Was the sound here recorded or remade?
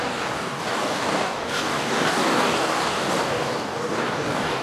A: remade